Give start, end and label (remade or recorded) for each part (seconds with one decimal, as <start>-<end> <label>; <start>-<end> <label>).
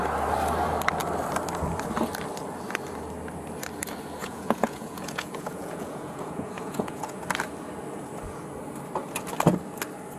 0.0-4.2 recorded; 4.2-7.2 remade; 7.2-10.2 recorded